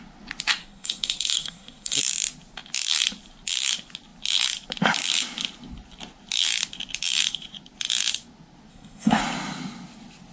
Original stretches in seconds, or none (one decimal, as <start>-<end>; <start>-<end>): 0.0-0.6; 2.0-8.7; 9.2-10.3